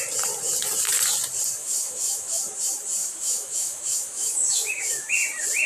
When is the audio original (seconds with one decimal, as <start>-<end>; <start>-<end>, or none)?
0.0-1.6; 2.4-3.0; 5.1-5.7